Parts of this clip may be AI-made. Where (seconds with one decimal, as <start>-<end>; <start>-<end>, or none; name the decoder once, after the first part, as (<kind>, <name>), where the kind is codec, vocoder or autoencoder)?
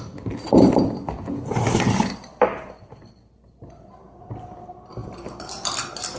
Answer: 2.3-4.3 (vocoder, BigVGAN v2)